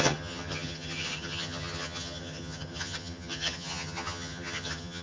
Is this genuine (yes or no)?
no